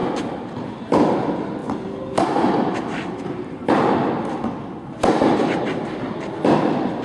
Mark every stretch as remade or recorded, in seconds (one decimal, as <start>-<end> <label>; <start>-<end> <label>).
0.0-7.0 recorded